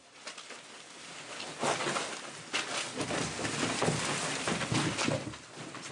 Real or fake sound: real